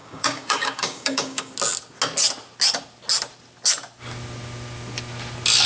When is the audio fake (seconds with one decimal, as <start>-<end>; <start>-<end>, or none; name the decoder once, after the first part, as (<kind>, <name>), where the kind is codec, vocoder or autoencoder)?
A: 0.0-1.5 (codec, DAC)